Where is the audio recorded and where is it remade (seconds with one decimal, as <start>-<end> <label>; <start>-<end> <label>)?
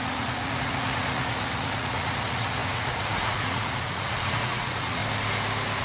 0.0-5.0 remade; 5.0-5.8 recorded